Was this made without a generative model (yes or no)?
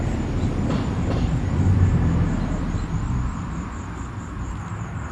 no